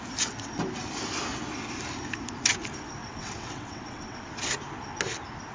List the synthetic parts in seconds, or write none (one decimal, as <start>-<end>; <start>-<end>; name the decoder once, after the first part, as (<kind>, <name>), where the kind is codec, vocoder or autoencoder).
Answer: 3.0-4.3 (vocoder, WaveNeXt)